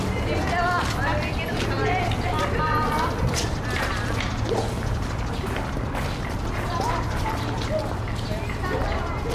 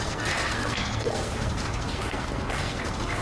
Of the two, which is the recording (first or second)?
first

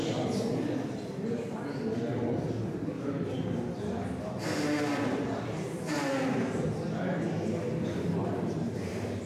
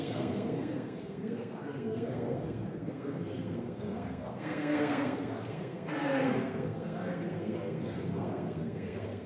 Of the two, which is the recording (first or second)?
first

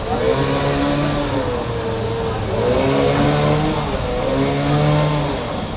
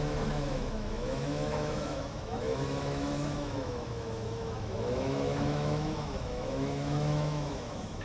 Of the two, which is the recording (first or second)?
first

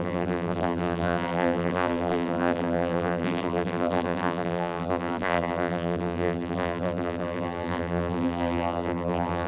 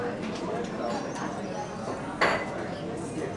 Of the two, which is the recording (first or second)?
second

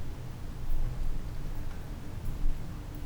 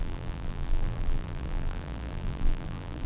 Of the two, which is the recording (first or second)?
first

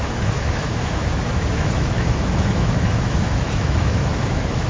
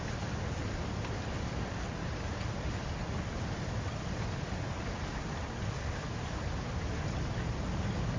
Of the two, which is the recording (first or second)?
second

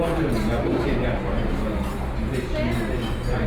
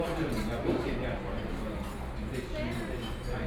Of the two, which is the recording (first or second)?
first